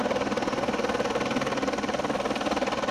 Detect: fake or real real